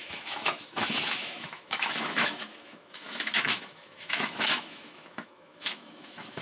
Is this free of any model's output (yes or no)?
no